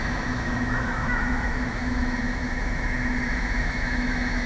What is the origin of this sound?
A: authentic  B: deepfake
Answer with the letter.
B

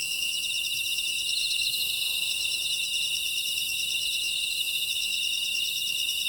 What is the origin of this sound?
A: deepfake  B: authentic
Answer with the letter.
A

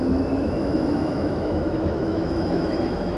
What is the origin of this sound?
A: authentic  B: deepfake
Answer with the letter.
B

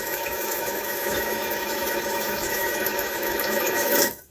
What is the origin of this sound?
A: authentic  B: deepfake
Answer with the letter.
B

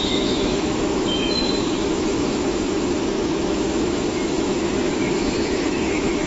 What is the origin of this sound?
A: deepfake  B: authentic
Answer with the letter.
A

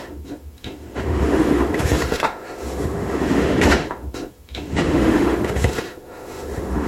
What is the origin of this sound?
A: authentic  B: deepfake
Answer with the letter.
B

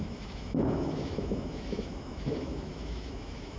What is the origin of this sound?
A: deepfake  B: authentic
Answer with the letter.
A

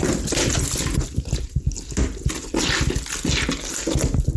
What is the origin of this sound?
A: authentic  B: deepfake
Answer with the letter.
A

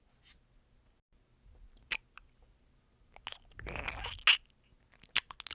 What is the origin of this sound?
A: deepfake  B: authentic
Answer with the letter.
B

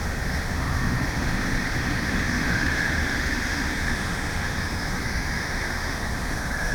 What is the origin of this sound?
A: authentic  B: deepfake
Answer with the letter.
B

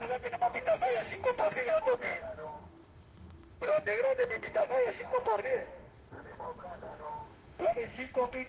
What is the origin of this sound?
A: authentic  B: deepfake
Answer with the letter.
B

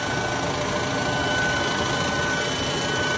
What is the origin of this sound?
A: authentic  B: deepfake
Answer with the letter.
A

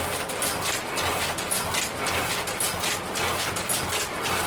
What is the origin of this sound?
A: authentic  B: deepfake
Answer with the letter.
A